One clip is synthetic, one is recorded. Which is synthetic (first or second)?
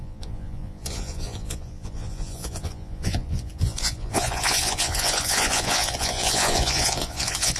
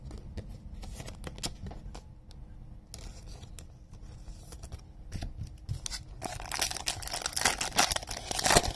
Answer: first